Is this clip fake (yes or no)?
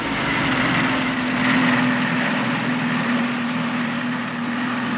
no